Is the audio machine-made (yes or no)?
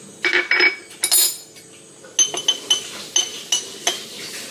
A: no